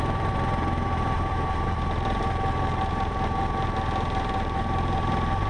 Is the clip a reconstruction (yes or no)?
yes